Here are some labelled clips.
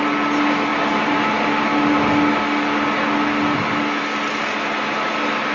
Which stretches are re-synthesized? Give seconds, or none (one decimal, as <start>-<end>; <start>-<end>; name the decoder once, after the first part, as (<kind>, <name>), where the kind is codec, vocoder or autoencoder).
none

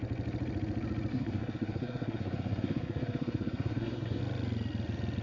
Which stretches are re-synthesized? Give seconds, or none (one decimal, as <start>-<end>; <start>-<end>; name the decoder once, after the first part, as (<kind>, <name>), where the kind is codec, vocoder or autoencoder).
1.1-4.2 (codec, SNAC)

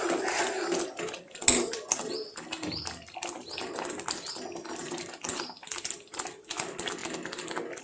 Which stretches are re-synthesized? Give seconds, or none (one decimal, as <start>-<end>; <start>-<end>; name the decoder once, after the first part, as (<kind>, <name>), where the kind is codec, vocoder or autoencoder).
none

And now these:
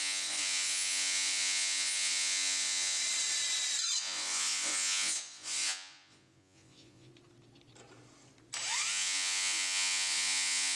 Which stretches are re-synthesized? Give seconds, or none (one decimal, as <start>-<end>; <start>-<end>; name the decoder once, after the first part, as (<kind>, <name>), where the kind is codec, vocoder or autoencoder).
0.0-3.0 (vocoder, Vocos); 4.0-7.1; 8.9-10.8

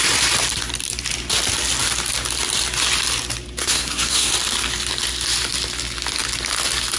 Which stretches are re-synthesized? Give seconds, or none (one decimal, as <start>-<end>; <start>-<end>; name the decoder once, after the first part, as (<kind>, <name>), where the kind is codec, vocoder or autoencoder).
3.6-4.3 (codec, SNAC)

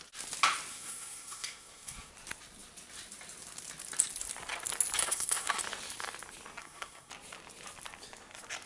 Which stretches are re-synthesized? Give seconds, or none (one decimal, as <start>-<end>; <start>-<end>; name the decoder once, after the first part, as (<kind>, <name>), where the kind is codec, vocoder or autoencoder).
0.7-2.1 (codec, SNAC); 5.0-5.6; 6.6-7.1